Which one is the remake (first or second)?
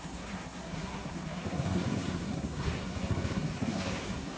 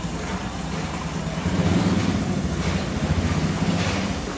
first